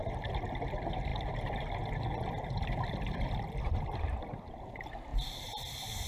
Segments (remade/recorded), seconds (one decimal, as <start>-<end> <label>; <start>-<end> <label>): 0.0-0.7 recorded; 0.7-1.1 remade; 1.1-2.9 recorded; 2.9-6.1 remade